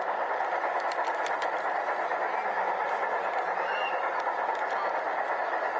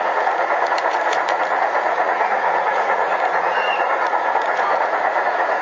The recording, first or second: first